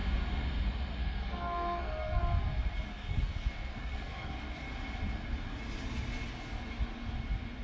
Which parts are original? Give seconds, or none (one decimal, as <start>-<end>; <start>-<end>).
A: 0.0-1.0; 2.2-2.9; 4.3-7.6